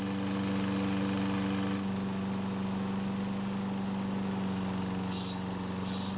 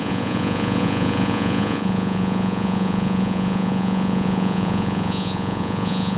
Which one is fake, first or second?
second